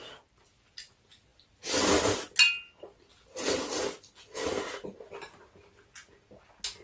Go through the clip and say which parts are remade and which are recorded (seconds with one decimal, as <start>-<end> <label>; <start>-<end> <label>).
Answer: 0.0-6.8 recorded